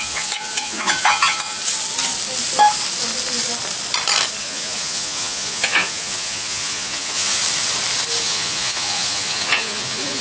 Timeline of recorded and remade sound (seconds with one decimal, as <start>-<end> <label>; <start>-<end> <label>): 0.0-1.6 remade; 1.6-4.4 recorded; 4.4-7.4 remade; 7.4-8.2 recorded; 8.2-10.2 remade